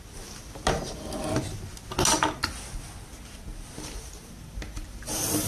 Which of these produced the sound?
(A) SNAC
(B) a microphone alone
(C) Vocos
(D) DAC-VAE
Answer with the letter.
B